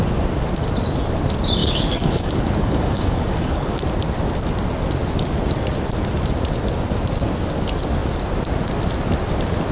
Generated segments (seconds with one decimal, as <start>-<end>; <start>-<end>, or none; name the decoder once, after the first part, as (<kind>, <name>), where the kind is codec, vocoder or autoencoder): 1.6-3.8 (codec, DAC)